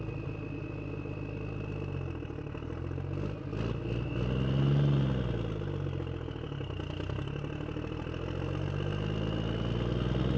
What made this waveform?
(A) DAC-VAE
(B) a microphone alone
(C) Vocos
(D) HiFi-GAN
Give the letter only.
B